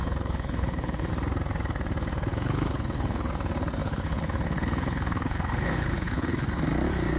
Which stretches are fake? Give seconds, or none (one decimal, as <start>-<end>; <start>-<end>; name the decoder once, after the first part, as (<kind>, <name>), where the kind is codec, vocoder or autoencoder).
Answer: 0.0-1.1 (codec, HILCodec); 2.3-3.3; 3.8-6.5